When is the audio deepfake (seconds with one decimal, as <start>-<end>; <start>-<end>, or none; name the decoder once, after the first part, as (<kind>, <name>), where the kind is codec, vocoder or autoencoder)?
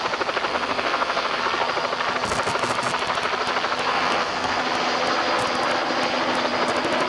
0.5-1.4 (codec, SNAC); 3.9-4.6